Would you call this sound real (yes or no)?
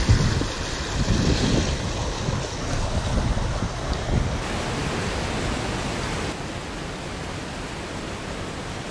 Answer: yes